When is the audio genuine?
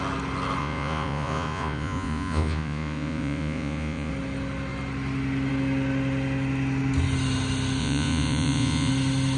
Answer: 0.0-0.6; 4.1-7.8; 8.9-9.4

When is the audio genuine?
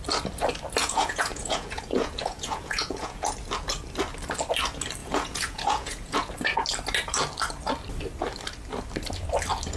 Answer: 0.0-0.8; 3.3-5.0; 6.3-9.8